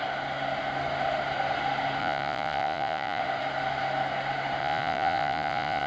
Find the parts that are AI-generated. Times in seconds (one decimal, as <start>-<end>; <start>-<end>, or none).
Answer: 2.0-3.2; 4.6-5.9